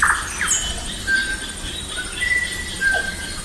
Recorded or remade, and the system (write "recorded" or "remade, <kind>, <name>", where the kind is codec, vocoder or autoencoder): recorded